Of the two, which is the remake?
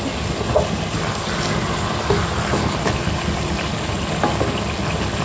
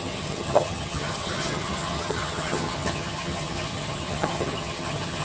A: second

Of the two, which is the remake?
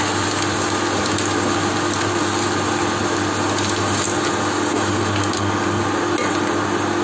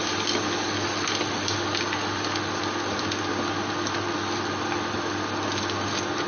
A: second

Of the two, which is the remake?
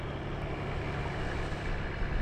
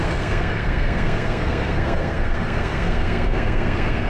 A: second